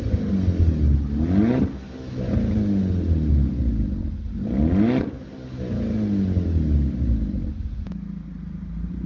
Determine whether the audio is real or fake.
real